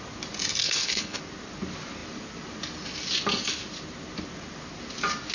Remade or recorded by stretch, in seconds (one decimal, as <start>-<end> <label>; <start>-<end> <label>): 0.0-0.6 recorded; 0.6-1.2 remade; 1.2-5.3 recorded